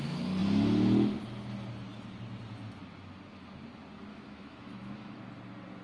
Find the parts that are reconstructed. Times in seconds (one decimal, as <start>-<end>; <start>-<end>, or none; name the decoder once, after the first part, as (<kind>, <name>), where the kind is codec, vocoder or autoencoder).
4.1-5.2 (autoencoder, DAC-VAE)